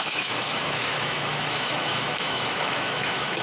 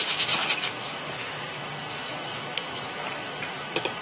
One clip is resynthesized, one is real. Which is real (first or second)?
second